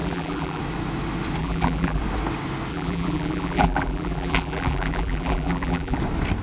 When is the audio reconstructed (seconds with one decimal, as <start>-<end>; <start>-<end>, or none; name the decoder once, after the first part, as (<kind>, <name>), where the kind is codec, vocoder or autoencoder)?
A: 0.0-0.6 (vocoder, BigVGAN v2); 1.4-2.0; 2.7-6.0